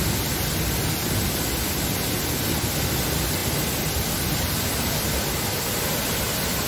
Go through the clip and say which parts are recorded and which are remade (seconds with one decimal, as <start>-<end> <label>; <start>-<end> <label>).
0.0-6.7 recorded